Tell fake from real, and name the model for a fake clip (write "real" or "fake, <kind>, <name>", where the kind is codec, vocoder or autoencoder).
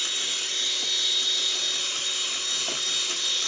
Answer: real